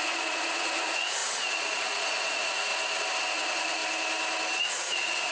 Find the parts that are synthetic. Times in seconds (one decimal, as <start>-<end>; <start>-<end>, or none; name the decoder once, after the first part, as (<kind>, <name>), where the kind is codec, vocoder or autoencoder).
0.0-2.7 (vocoder, Vocos); 3.3-3.8; 4.7-5.3